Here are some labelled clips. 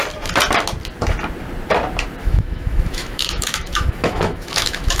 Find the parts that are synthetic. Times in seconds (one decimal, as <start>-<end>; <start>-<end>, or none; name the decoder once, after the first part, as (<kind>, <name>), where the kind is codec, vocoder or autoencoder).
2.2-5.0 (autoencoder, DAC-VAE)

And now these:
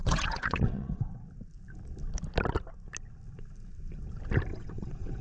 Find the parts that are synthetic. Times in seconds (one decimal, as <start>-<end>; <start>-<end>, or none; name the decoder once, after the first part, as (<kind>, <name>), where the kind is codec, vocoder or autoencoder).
0.0-1.2 (vocoder, WaveNeXt); 4.5-5.2

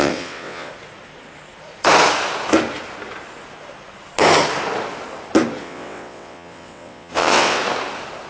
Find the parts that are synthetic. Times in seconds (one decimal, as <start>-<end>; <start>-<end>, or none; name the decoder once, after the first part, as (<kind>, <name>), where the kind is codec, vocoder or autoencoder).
0.0-0.7 (vocoder, WaveNeXt); 5.6-7.6

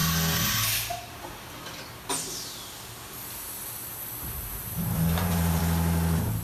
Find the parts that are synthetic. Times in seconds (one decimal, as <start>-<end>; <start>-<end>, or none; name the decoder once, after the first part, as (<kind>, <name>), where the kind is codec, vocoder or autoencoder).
4.5-5.6 (vocoder, BigVGAN v2)